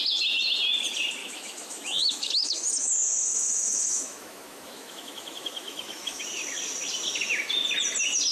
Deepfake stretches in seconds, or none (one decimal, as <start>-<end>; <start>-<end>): 1.2-6.2